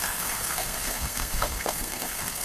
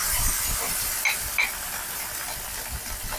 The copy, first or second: first